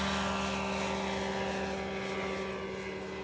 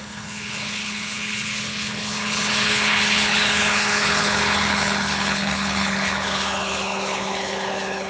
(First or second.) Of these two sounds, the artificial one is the second